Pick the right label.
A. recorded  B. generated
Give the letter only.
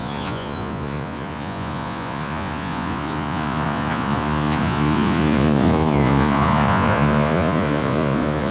B